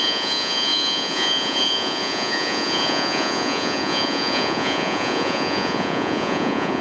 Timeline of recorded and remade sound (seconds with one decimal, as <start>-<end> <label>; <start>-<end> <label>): 0.0-6.8 remade